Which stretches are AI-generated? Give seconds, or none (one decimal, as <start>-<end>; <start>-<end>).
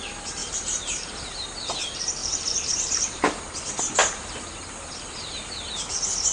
0.4-1.1; 2.2-3.4; 4.0-4.5